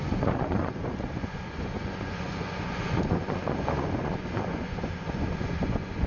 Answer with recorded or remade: remade